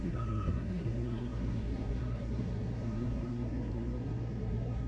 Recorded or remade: remade